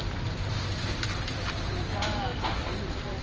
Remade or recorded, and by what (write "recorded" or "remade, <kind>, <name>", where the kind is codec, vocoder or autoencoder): recorded